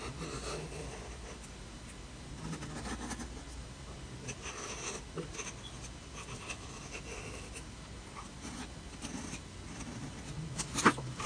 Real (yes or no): yes